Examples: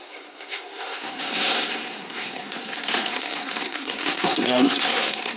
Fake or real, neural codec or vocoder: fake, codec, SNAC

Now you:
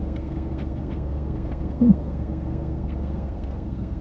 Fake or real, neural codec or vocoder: fake, codec, SNAC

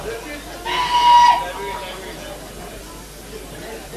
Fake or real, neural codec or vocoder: real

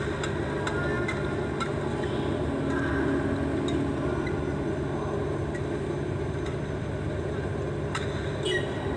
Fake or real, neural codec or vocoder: real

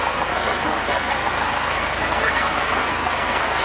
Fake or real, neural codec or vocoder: fake, codec, SNAC